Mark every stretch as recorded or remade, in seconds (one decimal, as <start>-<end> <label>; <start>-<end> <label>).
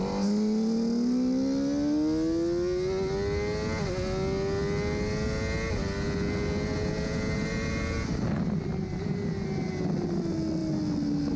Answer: 0.0-11.4 recorded